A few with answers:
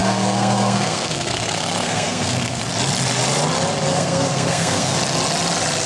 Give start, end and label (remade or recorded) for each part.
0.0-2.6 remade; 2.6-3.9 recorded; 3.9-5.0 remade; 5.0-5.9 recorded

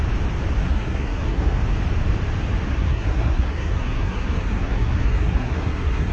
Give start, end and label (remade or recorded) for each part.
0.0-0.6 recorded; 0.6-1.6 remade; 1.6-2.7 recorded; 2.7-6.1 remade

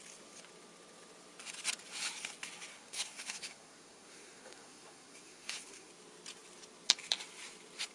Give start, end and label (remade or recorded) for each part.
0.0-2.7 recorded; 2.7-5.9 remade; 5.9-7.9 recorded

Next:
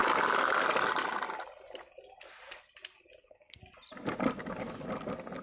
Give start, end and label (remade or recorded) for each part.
0.0-3.2 recorded; 3.2-3.6 remade; 3.6-5.4 recorded

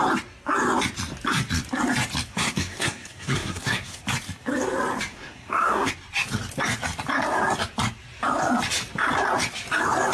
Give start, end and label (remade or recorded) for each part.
0.0-2.3 recorded; 2.3-4.0 remade; 4.0-5.1 recorded; 5.1-5.9 remade; 5.9-10.1 recorded